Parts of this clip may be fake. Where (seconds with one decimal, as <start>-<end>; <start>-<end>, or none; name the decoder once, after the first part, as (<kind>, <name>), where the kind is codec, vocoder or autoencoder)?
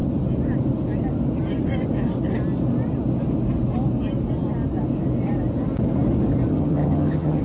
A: 6.5-7.4 (vocoder, HiFi-GAN)